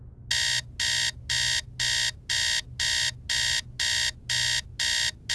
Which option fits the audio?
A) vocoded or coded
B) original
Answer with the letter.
B